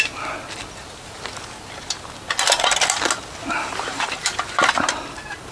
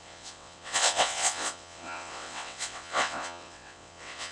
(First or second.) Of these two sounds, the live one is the first